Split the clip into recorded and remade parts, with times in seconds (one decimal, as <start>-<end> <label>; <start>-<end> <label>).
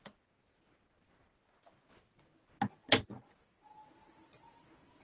0.0-5.0 recorded